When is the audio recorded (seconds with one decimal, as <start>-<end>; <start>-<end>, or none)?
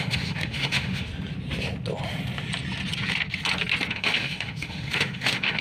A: 1.1-3.9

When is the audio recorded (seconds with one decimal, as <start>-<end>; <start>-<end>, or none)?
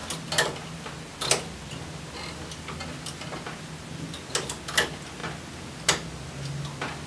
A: 0.0-7.1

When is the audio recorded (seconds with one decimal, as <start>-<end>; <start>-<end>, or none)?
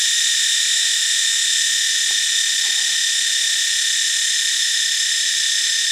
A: 1.0-4.5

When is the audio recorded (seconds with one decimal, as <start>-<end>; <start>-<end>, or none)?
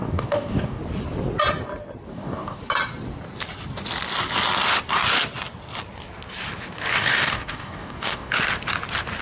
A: 0.8-2.1; 2.6-6.9; 8.4-9.2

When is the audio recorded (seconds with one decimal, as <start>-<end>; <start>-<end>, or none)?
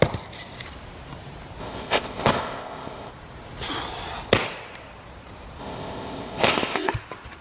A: 0.0-1.6; 3.1-5.6; 6.9-7.4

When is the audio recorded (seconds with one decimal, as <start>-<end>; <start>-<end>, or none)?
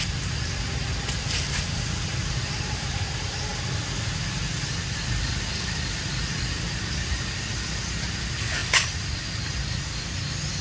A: 0.0-10.6